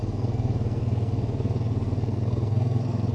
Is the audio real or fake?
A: fake